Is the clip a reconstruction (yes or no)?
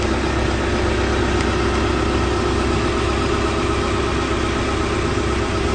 no